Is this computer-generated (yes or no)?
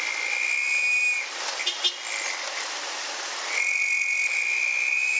no